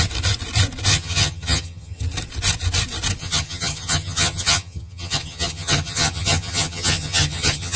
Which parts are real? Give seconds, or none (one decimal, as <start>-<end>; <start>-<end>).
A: 0.0-0.9; 2.0-3.2